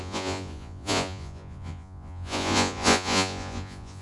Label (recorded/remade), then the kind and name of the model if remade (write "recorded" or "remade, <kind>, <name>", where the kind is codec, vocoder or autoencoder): remade, vocoder, Vocos